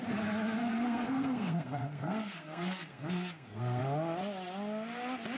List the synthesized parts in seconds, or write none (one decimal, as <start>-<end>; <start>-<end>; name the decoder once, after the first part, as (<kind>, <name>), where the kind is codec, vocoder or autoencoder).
0.6-3.8 (codec, SNAC)

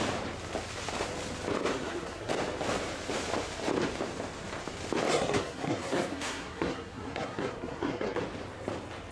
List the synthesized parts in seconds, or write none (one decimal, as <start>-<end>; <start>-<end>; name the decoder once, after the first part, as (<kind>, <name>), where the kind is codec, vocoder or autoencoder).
1.7-2.3 (codec, SNAC); 5.1-8.2

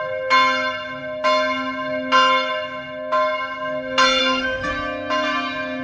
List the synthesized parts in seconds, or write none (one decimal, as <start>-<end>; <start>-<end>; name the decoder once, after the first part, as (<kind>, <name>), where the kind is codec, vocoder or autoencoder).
4.2-4.7 (codec, SNAC)